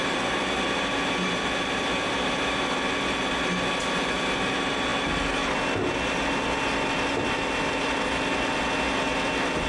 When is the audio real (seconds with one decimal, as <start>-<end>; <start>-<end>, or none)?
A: 0.0-9.7